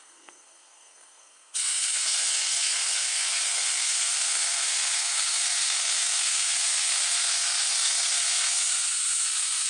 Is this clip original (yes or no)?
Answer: no